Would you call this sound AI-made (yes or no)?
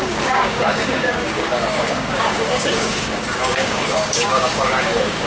yes